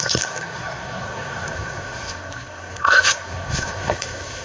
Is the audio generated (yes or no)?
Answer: yes